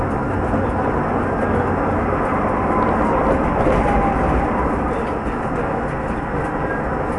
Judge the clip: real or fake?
real